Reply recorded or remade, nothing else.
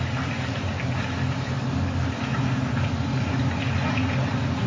recorded